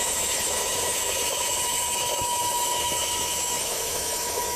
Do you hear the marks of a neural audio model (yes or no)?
yes